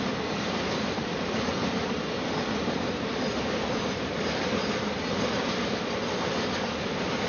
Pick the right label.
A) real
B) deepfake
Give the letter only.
A